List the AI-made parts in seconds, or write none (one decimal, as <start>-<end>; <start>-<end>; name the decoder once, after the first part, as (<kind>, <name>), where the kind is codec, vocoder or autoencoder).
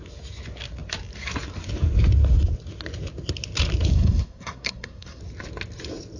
3.9-5.2 (codec, SNAC)